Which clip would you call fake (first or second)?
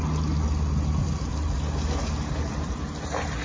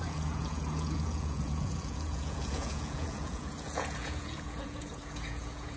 second